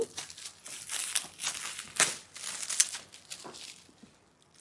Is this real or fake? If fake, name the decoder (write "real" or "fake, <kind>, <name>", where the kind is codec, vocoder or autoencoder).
real